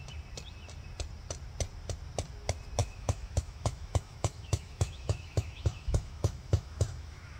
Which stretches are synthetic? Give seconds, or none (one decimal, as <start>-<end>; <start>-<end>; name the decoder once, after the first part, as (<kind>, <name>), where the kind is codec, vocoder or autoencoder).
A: 2.8-7.4 (autoencoder, DAC-VAE)